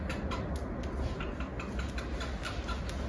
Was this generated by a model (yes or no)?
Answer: no